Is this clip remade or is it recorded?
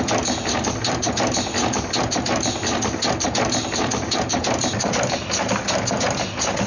recorded